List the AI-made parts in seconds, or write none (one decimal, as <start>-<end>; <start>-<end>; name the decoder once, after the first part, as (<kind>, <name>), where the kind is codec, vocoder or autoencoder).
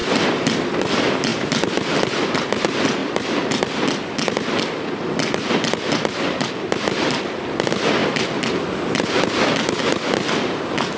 0.0-0.9 (vocoder, BigVGAN v2); 3.0-3.6